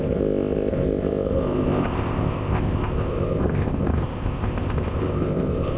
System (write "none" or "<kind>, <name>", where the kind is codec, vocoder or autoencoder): codec, ZipCodec